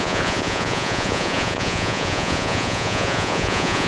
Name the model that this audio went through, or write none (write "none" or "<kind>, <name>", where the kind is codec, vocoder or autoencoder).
vocoder, Vocos